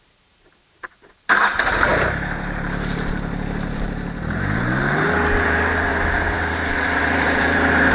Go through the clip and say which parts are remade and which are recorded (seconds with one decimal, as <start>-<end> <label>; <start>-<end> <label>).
0.0-7.9 remade